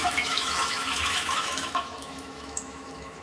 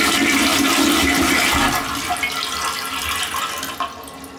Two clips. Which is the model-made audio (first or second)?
first